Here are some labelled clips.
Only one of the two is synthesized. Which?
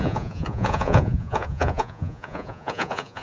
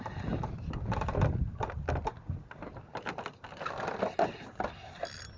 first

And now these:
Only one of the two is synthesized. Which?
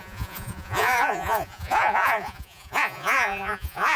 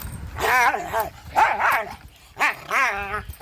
first